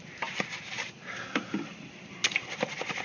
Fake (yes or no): no